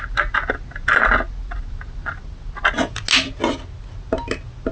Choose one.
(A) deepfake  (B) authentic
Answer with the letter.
B